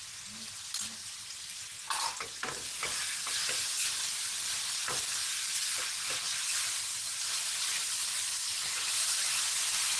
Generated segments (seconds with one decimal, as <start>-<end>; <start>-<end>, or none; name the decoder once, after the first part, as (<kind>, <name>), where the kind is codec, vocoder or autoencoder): 1.0-1.6 (vocoder, BigVGAN v2); 8.0-9.3